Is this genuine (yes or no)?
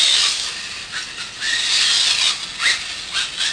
yes